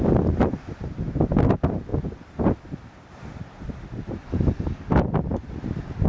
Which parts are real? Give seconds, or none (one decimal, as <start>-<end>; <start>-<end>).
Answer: 0.0-6.1